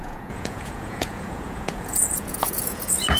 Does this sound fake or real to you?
fake